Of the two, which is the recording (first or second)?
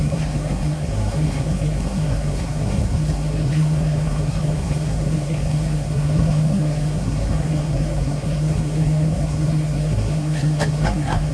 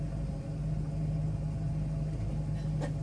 second